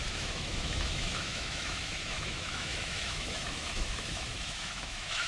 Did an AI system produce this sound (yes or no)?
yes